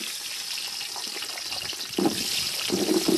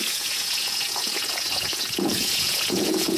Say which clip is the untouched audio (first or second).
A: first